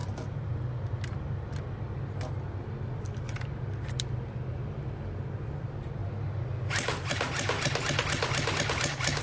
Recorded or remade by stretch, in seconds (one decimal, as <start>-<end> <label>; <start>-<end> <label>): 0.0-9.2 recorded